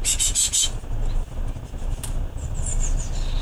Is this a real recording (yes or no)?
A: yes